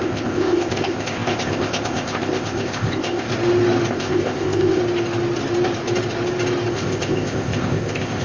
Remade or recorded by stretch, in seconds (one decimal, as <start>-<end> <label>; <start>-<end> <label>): 0.0-3.3 remade; 3.3-3.9 recorded; 3.9-4.8 remade; 4.8-6.7 recorded; 6.7-8.2 remade

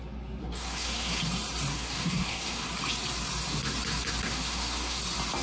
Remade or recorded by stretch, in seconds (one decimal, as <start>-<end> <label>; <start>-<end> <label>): 0.0-0.4 recorded; 0.4-1.2 remade; 1.2-1.7 recorded; 1.7-2.7 remade; 2.7-4.2 recorded; 4.2-5.0 remade; 5.0-5.4 recorded

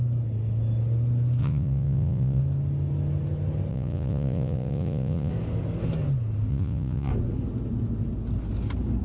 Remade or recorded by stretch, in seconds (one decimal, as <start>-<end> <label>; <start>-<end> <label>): 0.0-1.4 recorded; 1.4-2.4 remade; 2.4-3.7 recorded; 3.7-5.3 remade; 5.3-6.5 recorded; 6.5-7.1 remade; 7.1-9.0 recorded

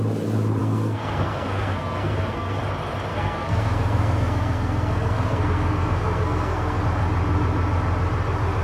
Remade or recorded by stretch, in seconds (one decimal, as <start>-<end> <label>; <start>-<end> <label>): 0.0-0.6 recorded; 0.6-2.6 remade; 2.6-3.1 recorded; 3.1-6.8 remade; 6.8-8.6 recorded

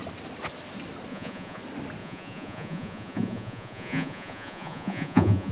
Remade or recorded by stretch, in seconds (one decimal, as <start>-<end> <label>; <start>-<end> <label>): 0.0-1.1 recorded; 1.1-1.6 remade; 1.6-2.0 recorded; 2.0-5.5 remade

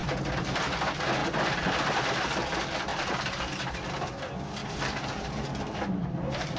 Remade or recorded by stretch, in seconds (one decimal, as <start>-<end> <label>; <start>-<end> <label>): 0.0-1.2 recorded; 1.2-1.9 remade; 1.9-2.9 recorded; 2.9-3.6 remade; 3.6-4.6 recorded; 4.6-6.6 remade

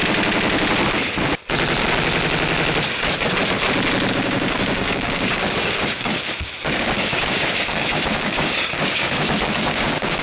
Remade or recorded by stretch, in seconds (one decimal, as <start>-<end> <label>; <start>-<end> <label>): 0.0-4.1 recorded; 4.1-6.1 remade; 6.1-6.6 recorded; 6.6-10.2 remade